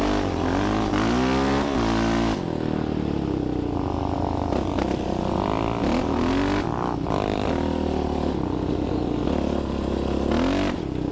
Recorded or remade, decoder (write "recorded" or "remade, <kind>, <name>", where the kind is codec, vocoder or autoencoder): recorded